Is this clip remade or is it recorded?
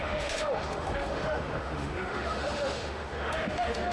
remade